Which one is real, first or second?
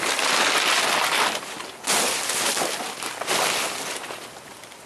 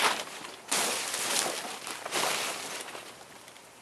first